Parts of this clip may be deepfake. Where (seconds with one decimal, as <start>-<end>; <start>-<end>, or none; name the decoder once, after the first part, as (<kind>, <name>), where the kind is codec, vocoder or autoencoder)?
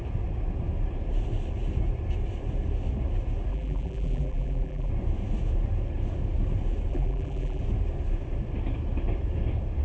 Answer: 3.5-4.9 (vocoder, BigVGAN v2); 6.9-7.6